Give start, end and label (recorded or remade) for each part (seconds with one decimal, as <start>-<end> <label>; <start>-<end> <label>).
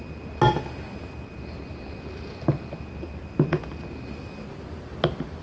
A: 0.0-5.4 recorded